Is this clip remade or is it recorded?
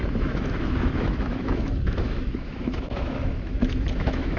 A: remade